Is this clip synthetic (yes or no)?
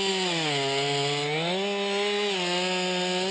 no